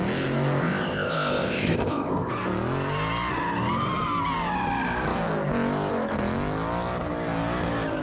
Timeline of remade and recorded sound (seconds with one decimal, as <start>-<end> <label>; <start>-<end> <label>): 0.0-0.6 recorded; 0.6-2.3 remade; 2.3-8.0 recorded